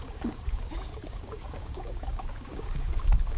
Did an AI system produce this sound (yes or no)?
yes